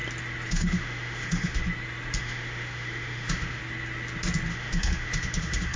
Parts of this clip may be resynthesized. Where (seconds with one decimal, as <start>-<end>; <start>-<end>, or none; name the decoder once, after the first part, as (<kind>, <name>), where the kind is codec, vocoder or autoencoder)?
0.5-1.6 (autoencoder, DAC-VAE); 2.2-3.6; 4.5-5.8